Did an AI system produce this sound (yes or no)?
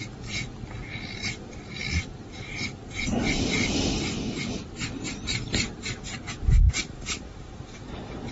no